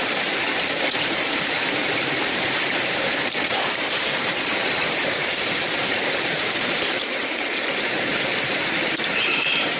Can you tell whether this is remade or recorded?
remade